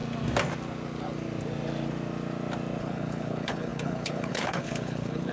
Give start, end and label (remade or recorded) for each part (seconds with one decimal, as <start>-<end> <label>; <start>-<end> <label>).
0.0-2.8 recorded; 2.8-5.3 remade